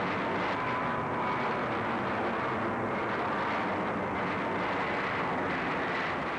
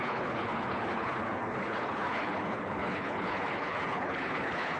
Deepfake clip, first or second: second